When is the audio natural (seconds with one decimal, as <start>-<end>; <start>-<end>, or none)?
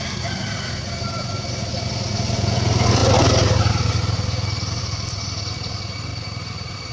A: 0.0-6.1